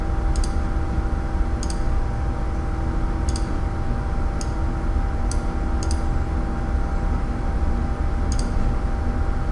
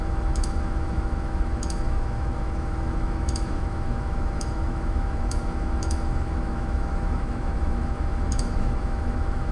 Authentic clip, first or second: first